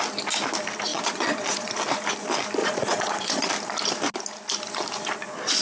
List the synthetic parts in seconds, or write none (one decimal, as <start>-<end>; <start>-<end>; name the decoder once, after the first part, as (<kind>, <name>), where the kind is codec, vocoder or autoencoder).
0.9-1.7 (vocoder, Vocos); 2.6-3.5